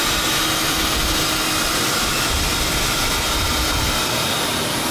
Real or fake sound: real